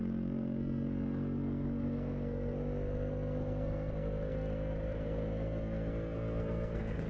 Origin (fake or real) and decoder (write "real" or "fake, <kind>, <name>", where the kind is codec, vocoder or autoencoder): fake, codec, SNAC